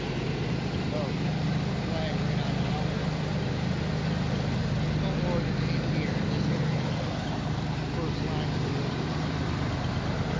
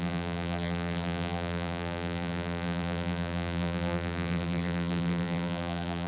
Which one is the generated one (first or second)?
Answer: second